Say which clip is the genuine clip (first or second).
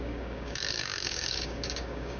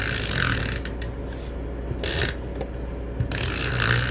second